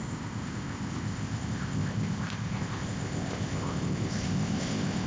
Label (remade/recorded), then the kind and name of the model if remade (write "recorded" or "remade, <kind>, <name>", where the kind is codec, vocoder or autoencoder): remade, codec, ZipCodec